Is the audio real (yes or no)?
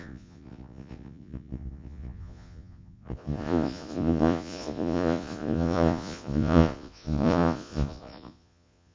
no